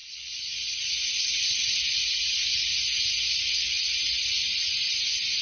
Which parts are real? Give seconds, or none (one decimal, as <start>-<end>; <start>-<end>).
0.9-5.4